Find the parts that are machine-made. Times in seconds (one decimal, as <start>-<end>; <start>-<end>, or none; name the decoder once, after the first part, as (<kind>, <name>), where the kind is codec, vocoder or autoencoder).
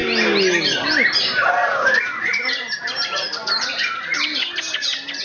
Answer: none